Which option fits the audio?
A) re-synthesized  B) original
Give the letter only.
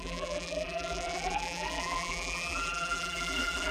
A